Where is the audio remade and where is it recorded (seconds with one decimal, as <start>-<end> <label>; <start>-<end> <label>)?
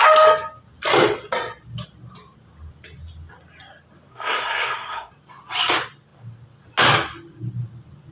0.0-4.1 recorded; 4.1-5.1 remade; 5.1-8.1 recorded